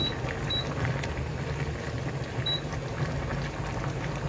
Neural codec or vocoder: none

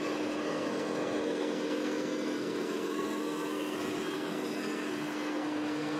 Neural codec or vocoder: codec, SNAC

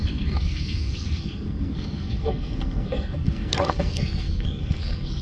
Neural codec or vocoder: codec, SNAC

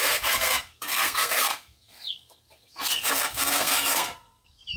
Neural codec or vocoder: codec, SNAC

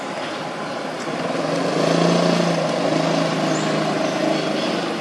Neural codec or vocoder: none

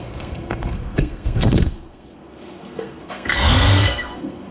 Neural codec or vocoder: codec, SNAC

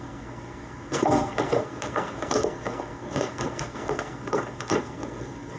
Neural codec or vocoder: codec, SNAC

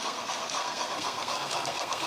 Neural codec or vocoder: codec, SNAC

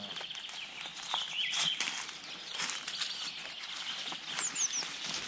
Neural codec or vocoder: none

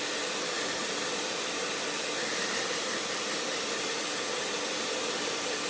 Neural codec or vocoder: none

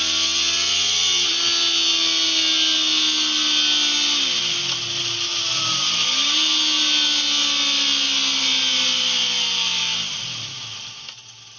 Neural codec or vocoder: none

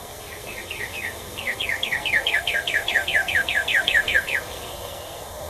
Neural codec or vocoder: codec, SNAC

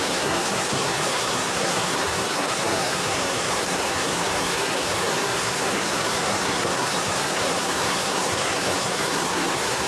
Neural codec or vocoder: codec, SNAC